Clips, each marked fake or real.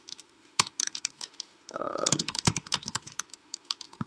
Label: fake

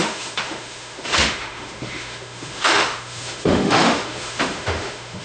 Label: fake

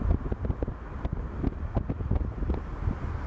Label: real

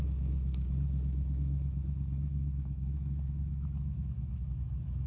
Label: fake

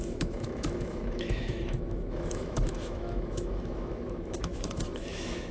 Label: fake